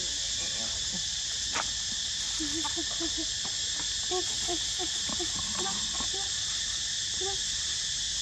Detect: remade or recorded recorded